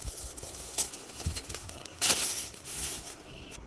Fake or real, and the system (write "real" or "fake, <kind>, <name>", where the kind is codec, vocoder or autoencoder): fake, codec, SNAC